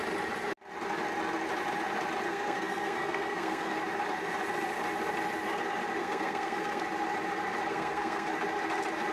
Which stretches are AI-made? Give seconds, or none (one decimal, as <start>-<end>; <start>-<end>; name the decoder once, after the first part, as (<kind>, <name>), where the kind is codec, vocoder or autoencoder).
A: 2.3-3.8 (codec, SNAC); 6.0-6.8; 7.7-8.3